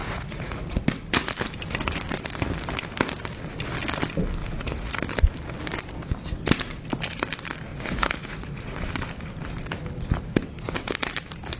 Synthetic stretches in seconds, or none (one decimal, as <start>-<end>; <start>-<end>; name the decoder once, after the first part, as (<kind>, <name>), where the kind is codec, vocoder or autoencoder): 0.0-0.8 (vocoder, Vocos); 4.4-5.0; 7.7-8.9